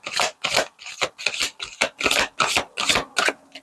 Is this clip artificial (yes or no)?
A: no